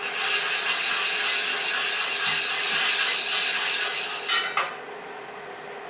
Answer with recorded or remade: recorded